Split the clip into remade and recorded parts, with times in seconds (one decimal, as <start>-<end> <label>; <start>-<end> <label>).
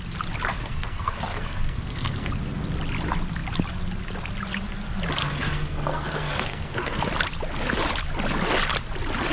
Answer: 0.0-0.5 recorded; 0.5-2.3 remade; 2.3-5.2 recorded; 5.2-7.0 remade; 7.0-9.3 recorded